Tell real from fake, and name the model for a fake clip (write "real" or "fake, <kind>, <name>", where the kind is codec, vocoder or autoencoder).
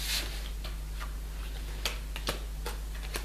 real